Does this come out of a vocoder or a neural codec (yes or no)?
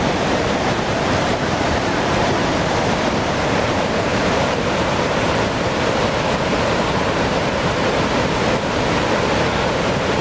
yes